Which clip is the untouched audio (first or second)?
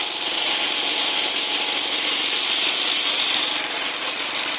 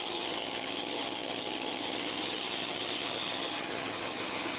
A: first